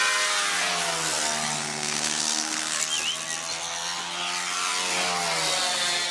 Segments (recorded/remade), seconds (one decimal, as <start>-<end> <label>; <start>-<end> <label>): 0.0-1.6 recorded; 1.6-2.8 remade; 2.8-6.1 recorded